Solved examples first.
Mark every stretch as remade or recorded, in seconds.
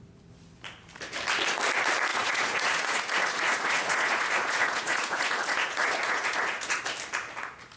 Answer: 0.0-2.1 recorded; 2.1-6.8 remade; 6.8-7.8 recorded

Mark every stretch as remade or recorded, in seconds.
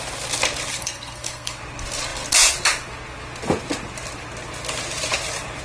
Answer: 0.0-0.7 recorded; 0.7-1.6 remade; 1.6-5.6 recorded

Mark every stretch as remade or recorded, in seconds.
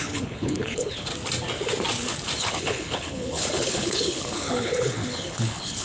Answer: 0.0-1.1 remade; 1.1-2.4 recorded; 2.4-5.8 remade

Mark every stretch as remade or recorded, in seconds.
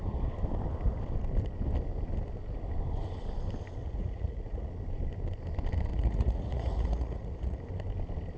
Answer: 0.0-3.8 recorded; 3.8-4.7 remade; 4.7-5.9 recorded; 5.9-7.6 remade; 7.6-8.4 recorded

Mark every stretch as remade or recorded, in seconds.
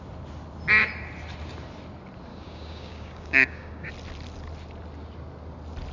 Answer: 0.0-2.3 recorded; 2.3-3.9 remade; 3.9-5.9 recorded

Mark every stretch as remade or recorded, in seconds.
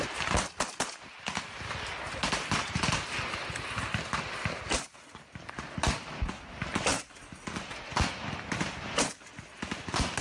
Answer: 0.0-10.2 recorded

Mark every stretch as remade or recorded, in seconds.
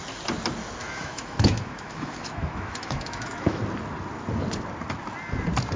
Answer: 0.0-0.8 recorded; 0.8-3.6 remade; 3.6-5.8 recorded